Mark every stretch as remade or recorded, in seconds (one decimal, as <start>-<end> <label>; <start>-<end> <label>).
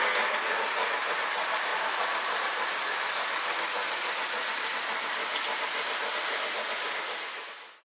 0.0-1.7 recorded; 1.7-4.6 remade; 4.6-5.3 recorded; 5.3-6.1 remade; 6.1-7.9 recorded